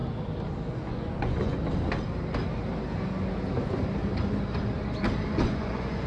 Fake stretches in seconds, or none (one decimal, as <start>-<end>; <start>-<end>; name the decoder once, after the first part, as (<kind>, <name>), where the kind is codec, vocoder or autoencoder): 0.7-1.6 (vocoder, Vocos); 5.3-6.1